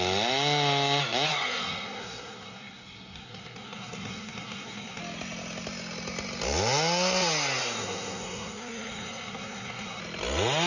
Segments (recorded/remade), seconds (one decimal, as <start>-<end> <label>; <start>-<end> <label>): 0.0-1.3 recorded; 1.3-5.0 remade; 5.0-7.6 recorded; 7.6-10.0 remade; 10.0-10.7 recorded